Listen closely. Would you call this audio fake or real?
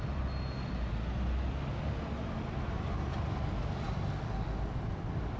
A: real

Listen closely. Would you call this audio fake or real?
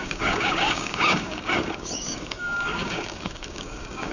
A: fake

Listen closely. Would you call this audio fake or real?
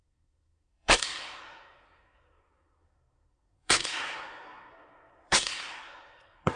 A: fake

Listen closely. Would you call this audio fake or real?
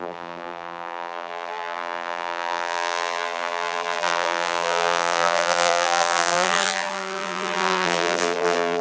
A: fake